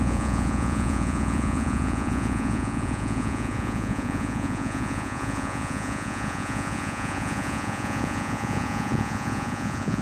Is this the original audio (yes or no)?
no